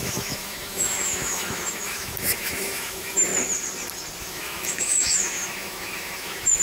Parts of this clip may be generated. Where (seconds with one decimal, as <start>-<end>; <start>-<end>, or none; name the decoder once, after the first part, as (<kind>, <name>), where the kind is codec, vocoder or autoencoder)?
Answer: 0.0-3.3 (autoencoder, DAC-VAE); 4.2-6.6